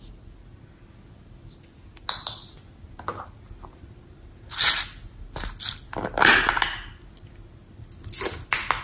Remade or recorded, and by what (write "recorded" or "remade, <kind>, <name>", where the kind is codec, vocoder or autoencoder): recorded